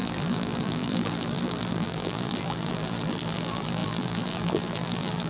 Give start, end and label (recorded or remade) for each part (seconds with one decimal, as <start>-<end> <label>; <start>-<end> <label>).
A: 0.0-5.3 remade